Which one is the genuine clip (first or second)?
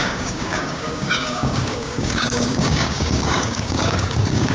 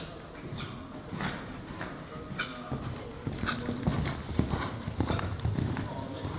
second